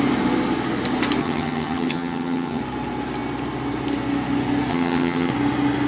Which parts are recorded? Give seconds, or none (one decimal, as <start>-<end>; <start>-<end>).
0.0-1.2; 2.6-4.7; 5.3-5.9